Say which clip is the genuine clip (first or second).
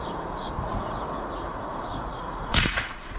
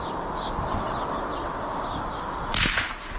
second